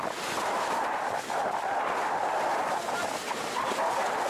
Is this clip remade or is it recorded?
recorded